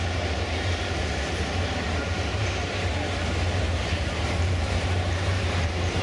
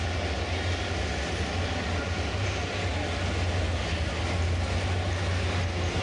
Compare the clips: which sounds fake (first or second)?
first